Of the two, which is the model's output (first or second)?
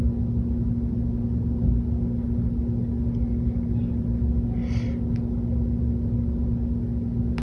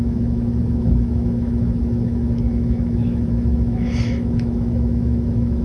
second